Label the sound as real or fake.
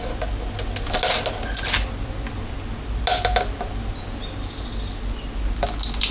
real